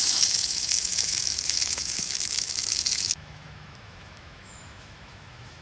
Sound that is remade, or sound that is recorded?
remade